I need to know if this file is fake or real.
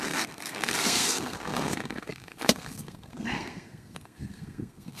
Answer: fake